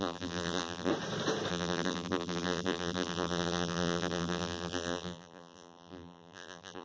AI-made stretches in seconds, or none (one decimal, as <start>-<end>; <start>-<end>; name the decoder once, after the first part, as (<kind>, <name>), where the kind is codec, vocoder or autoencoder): 0.0-0.9 (vocoder, BigVGAN v2); 1.5-6.8